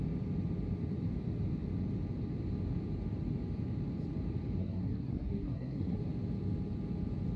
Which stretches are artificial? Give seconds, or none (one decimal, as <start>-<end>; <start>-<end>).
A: 4.6-6.0